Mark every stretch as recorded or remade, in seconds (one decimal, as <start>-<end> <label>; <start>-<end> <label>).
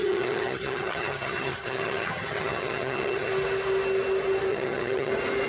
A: 0.0-3.3 remade; 3.3-4.5 recorded; 4.5-5.1 remade; 5.1-5.5 recorded